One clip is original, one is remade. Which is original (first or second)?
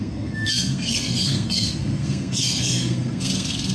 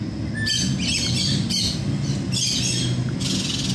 second